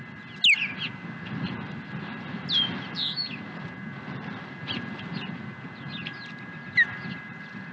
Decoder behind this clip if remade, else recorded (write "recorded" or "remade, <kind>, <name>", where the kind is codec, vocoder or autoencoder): recorded